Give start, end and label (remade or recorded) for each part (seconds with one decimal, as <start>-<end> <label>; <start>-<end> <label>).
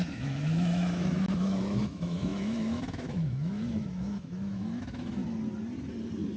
0.0-5.2 remade; 5.2-6.4 recorded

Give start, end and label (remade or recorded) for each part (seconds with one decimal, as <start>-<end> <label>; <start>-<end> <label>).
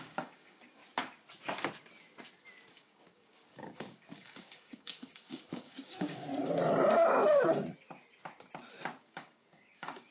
0.0-0.8 remade; 0.8-2.7 recorded; 2.7-6.3 remade; 6.3-9.0 recorded; 9.0-10.1 remade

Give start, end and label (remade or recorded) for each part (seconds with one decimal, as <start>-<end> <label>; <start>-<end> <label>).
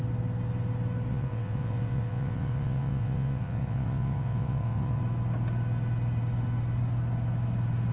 0.0-1.1 recorded; 1.1-5.0 remade; 5.0-7.9 recorded